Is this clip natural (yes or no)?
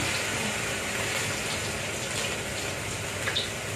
yes